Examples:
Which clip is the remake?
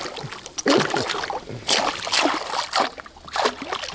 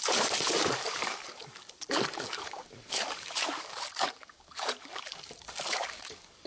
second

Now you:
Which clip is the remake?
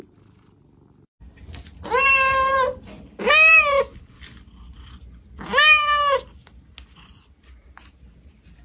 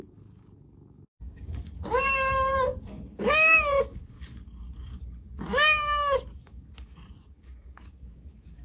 second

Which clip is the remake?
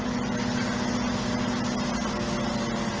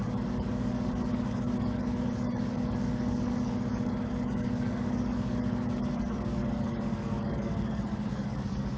second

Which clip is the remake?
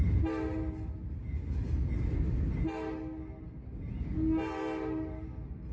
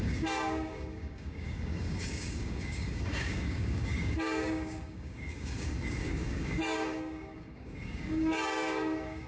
second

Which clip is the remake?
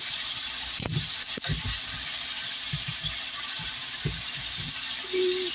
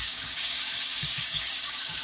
second